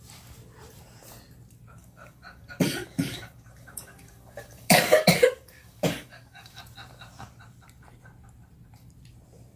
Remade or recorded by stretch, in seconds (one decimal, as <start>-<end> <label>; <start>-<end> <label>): 0.0-1.8 recorded; 1.8-6.6 remade; 6.6-9.6 recorded

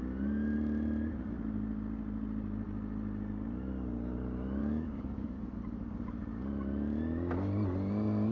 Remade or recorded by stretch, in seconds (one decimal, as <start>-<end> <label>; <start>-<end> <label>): 0.0-4.6 recorded; 4.6-5.6 remade; 5.6-8.3 recorded

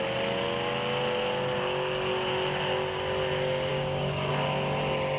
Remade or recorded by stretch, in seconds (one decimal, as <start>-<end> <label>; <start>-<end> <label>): 0.0-3.7 recorded; 3.7-4.3 remade; 4.3-5.2 recorded

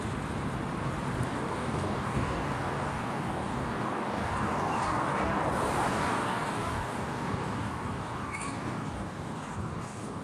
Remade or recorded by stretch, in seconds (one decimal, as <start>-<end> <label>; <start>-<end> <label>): 0.0-1.3 recorded; 1.3-5.4 remade; 5.4-5.9 recorded; 5.9-10.2 remade

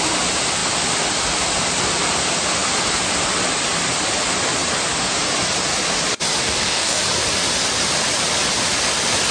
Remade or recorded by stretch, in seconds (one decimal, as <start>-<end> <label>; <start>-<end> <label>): 0.0-6.4 recorded; 6.4-7.0 remade; 7.0-9.3 recorded

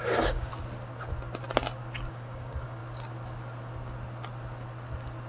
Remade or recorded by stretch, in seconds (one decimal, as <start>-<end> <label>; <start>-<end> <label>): 0.0-0.5 remade; 0.5-2.1 recorded; 2.1-2.8 remade; 2.8-5.3 recorded

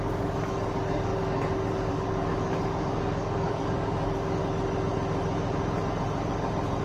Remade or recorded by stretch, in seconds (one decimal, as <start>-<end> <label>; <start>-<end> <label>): 0.0-4.4 remade; 4.4-6.8 recorded